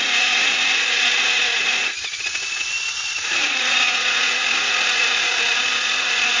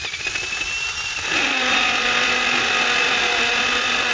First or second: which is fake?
first